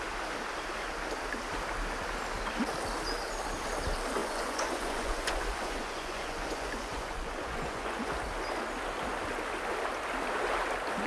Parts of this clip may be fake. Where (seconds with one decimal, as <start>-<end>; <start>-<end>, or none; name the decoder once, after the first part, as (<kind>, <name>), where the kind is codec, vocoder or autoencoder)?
4.2-8.1 (vocoder, Vocos)